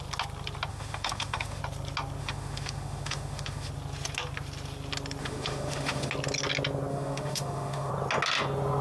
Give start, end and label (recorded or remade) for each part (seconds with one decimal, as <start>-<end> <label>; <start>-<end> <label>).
0.0-0.7 recorded; 0.7-1.6 remade; 1.6-2.2 recorded; 2.2-3.7 remade; 3.7-5.2 recorded; 5.2-6.1 remade; 6.1-6.9 recorded; 6.9-7.9 remade; 7.9-8.8 recorded